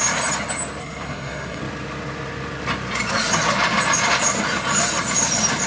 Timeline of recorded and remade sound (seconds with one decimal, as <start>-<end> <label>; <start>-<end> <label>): 0.0-0.8 recorded; 0.8-1.6 remade; 1.6-5.7 recorded